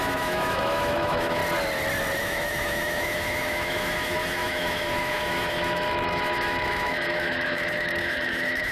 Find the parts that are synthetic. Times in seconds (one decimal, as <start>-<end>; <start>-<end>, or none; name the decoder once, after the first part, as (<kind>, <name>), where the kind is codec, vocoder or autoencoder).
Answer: 0.0-1.4 (autoencoder, DAC-VAE); 2.2-8.7